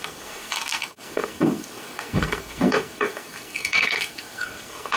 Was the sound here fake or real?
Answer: fake